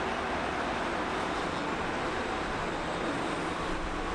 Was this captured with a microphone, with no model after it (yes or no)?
yes